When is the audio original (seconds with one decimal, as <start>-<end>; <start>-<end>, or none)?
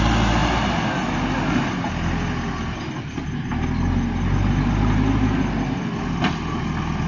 0.0-7.1